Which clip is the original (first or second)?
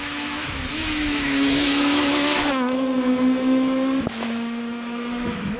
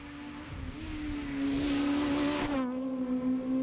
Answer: second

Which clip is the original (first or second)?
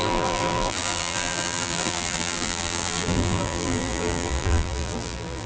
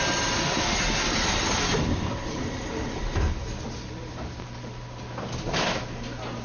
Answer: second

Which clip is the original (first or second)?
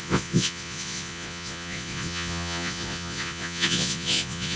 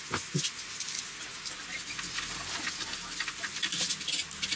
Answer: second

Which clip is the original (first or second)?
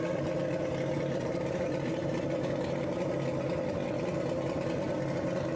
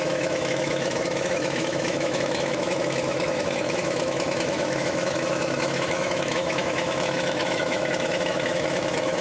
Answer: first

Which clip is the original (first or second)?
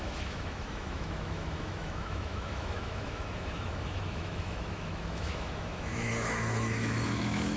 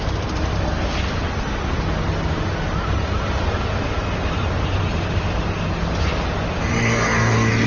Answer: second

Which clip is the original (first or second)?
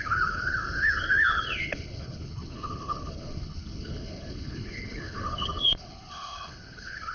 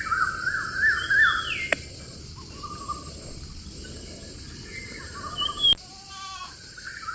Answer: second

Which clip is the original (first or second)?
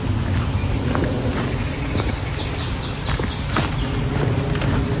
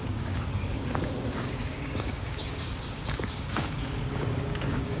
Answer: first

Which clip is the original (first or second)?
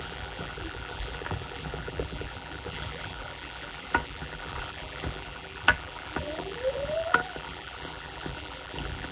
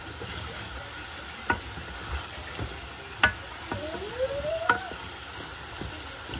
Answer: second